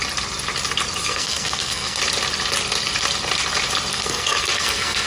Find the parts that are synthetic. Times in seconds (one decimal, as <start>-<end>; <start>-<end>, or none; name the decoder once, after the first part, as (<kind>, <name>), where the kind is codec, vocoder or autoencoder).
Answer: 1.0-2.0 (codec, SNAC); 3.9-5.1